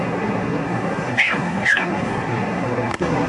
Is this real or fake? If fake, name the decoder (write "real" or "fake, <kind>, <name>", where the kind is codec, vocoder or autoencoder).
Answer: fake, codec, SNAC